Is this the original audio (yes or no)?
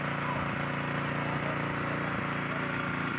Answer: yes